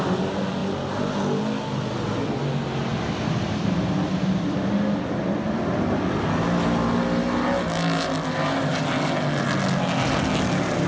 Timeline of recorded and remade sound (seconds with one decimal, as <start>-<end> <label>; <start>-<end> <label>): 0.0-10.9 recorded

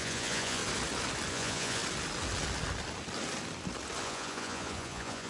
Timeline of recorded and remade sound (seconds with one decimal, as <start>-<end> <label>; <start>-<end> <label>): 0.0-0.6 remade; 0.6-1.3 recorded; 1.3-1.8 remade; 1.8-4.0 recorded; 4.0-5.3 remade

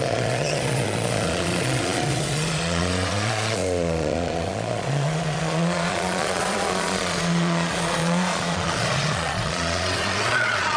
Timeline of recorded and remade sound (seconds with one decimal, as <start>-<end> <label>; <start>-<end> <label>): 0.0-10.8 remade

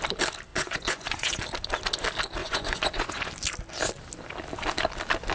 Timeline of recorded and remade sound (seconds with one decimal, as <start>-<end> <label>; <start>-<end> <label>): 0.0-0.5 recorded; 0.5-1.4 remade; 1.4-2.4 recorded; 2.4-3.3 remade; 3.3-5.3 recorded

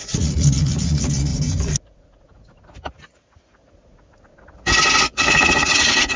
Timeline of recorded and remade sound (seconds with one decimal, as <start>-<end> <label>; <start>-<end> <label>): 0.0-1.3 remade; 1.3-1.8 recorded; 1.8-4.3 remade; 4.3-5.0 recorded; 5.0-6.2 remade

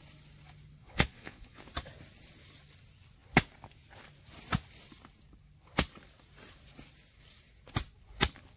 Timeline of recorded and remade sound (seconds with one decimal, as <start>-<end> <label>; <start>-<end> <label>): 0.0-0.8 recorded; 0.8-1.6 remade; 1.6-8.6 recorded

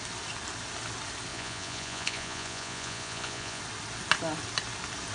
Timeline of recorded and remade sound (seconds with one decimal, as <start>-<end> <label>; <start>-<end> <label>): 0.0-1.3 recorded; 1.3-3.6 remade; 3.6-5.1 recorded